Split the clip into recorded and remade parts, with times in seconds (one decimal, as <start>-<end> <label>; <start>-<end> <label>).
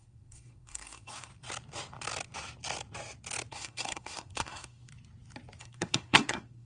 0.0-1.3 remade; 1.3-3.5 recorded; 3.5-4.9 remade; 4.9-5.6 recorded; 5.6-6.7 remade